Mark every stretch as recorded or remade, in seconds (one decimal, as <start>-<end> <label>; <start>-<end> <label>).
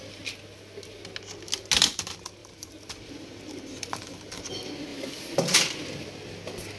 0.0-2.4 recorded; 2.4-4.5 remade; 4.5-4.9 recorded; 4.9-5.6 remade; 5.6-6.8 recorded